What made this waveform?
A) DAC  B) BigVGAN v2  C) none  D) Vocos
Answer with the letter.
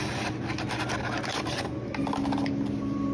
C